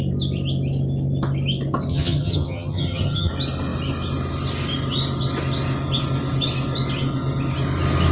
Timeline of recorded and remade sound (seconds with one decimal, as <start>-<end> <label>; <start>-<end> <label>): 0.0-1.9 recorded; 1.9-3.3 remade; 3.3-8.1 recorded